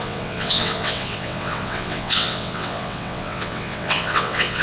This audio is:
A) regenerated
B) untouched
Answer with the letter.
A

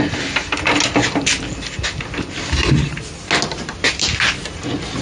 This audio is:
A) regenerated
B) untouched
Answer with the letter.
B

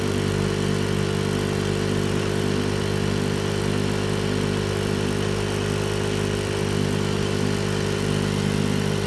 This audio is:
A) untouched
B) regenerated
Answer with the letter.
A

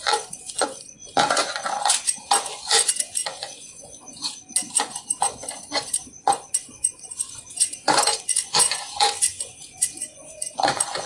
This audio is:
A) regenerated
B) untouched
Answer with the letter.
A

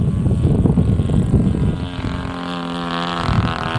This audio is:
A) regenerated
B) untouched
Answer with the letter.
B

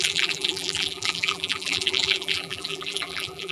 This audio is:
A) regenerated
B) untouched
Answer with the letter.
A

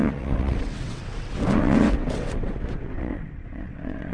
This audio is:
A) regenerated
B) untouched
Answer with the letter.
A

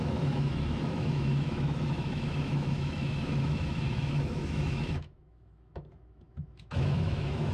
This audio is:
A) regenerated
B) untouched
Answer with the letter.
A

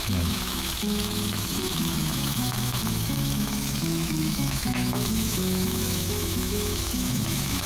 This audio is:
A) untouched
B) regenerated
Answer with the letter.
B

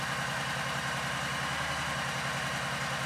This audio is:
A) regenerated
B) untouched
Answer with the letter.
B